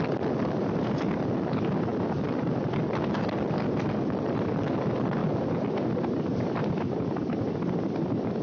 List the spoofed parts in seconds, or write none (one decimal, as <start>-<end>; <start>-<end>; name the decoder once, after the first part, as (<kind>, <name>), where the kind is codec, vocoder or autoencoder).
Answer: none